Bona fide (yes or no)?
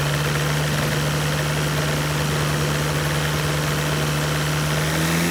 yes